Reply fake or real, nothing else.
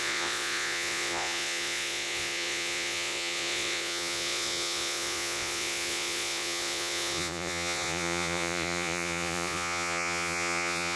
fake